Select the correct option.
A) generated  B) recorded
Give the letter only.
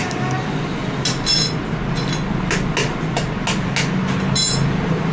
B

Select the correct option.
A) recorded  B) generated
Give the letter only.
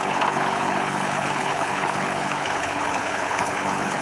B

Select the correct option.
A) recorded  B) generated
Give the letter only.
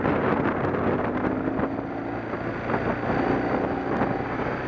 A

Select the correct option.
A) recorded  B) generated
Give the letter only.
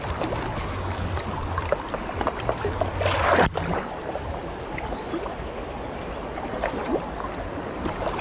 A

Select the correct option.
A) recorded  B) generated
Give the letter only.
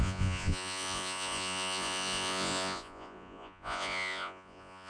B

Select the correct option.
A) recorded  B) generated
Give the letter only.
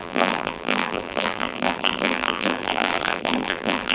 B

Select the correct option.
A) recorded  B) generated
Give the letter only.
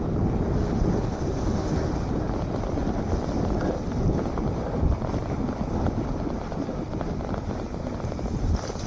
A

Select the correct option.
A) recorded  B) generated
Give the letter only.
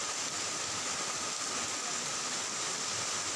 A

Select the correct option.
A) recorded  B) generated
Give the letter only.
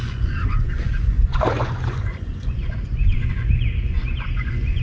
B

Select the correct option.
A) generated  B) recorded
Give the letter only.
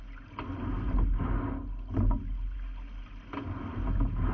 B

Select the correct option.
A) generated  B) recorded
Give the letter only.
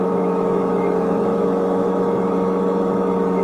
A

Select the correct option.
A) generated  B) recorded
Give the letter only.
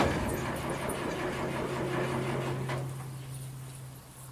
B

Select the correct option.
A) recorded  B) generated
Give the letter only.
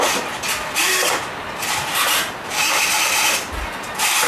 A